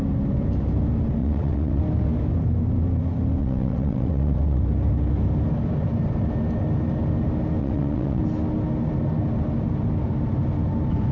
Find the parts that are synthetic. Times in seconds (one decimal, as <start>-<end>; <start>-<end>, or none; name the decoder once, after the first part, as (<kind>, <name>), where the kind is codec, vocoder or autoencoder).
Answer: 1.2-1.8 (vocoder, WaveNeXt); 3.4-4.6; 7.6-8.2